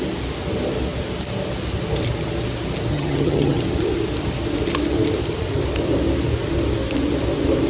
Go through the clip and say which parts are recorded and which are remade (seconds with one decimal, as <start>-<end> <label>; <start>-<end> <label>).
0.0-2.9 recorded; 2.9-3.6 remade; 3.6-7.7 recorded